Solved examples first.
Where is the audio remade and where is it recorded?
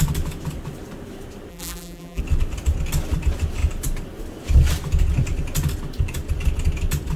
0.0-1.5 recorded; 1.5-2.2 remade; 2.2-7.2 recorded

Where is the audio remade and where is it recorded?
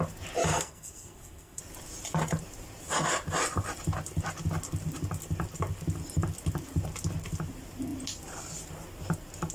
0.0-0.5 recorded; 0.5-1.6 remade; 1.6-9.5 recorded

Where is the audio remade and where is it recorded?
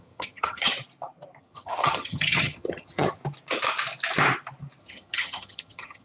0.0-0.7 remade; 0.7-1.4 recorded; 1.4-3.2 remade; 3.2-4.8 recorded; 4.8-6.0 remade